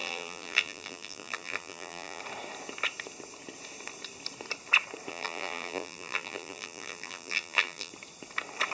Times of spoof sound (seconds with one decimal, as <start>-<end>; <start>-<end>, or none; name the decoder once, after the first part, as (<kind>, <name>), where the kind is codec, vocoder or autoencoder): 0.0-2.2 (vocoder, BigVGAN v2); 5.1-7.9